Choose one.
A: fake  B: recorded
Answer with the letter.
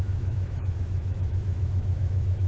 A